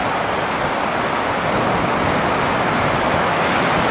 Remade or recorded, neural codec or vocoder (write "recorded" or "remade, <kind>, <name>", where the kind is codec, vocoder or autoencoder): recorded